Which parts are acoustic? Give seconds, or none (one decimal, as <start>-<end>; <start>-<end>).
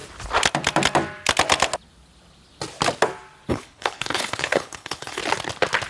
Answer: 0.0-3.5; 5.2-5.9